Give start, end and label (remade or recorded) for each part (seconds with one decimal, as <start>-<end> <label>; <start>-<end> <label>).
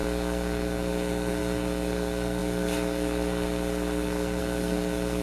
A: 0.0-5.2 remade